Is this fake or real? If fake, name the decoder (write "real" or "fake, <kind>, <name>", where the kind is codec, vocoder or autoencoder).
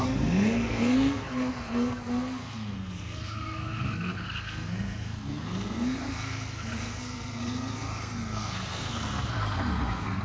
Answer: fake, codec, SNAC